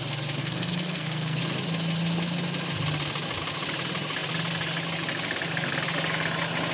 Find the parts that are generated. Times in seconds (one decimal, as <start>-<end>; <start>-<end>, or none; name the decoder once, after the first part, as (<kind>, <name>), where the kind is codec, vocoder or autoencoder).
0.4-1.4 (codec, SNAC)

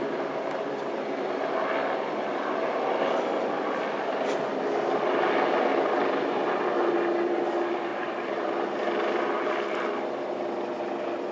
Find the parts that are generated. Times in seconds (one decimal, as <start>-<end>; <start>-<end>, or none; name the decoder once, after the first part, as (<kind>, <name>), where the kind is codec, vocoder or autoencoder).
7.9-8.5 (vocoder, BigVGAN v2)

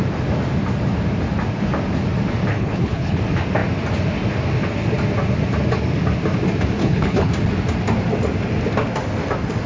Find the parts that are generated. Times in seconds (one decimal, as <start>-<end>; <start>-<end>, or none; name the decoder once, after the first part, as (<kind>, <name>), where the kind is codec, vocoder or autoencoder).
2.5-3.2 (codec, HILCodec); 6.8-7.3

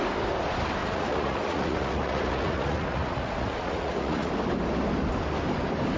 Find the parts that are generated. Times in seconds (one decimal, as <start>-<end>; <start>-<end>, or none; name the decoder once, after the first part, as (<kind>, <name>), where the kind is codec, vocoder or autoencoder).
0.8-4.3 (vocoder, Vocos)

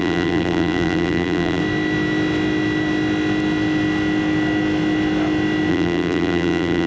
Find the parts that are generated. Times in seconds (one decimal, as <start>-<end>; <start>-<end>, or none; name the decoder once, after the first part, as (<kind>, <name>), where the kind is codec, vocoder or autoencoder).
0.0-1.6 (vocoder, BigVGAN v2); 5.7-6.9

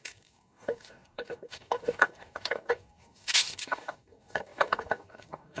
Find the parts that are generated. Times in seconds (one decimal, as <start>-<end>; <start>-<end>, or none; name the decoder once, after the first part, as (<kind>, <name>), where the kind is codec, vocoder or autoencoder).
0.0-5.6 (codec, DAC)

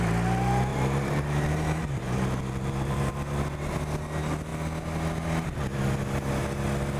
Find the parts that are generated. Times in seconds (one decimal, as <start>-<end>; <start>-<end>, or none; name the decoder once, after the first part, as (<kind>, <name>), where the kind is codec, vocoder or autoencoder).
0.7-3.1 (vocoder, BigVGAN v2)